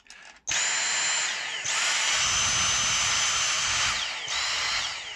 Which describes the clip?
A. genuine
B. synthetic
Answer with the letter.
A